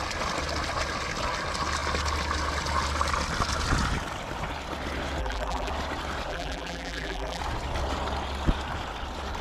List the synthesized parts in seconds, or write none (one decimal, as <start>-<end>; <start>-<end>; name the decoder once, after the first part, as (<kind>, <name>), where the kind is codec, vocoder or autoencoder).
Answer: 5.2-5.7 (vocoder, BigVGAN v2); 6.3-7.4